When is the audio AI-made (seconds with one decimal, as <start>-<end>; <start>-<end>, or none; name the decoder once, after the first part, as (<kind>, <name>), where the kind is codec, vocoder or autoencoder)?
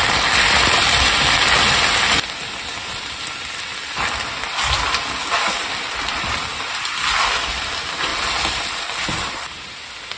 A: none